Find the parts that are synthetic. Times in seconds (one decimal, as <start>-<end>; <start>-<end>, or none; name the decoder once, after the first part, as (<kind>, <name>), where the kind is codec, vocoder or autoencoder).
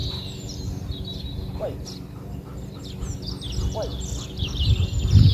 0.0-2.8 (vocoder, BigVGAN v2)